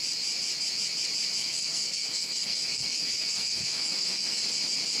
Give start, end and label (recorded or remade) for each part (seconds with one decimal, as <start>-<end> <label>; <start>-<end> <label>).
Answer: 0.0-1.4 recorded; 1.4-4.4 remade; 4.4-5.0 recorded